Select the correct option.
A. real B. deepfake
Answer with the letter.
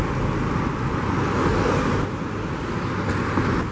A